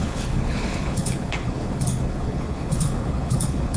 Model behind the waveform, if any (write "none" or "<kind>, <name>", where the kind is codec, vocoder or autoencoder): codec, HILCodec